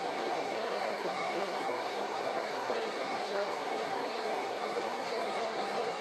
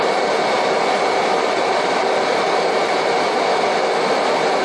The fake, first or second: first